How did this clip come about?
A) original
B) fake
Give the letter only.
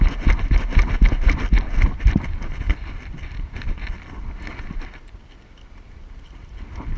A